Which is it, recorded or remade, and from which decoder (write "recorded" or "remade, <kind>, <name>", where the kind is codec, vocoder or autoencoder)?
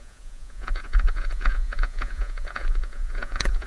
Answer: remade, vocoder, Vocos